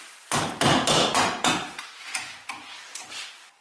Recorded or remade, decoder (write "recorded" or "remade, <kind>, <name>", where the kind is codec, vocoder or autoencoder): remade, vocoder, BigVGAN v2